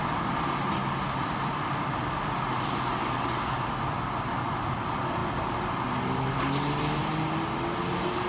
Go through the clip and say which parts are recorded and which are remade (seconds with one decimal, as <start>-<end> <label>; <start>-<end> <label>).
0.0-8.3 recorded